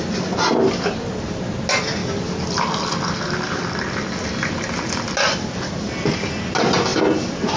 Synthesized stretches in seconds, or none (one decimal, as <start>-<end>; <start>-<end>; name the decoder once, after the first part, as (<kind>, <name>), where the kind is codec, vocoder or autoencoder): none